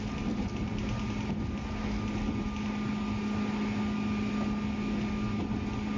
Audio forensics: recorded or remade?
recorded